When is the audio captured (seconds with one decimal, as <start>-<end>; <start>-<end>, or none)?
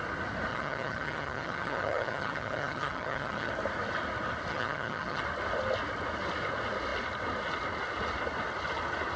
0.0-0.5; 3.5-4.5; 5.2-9.2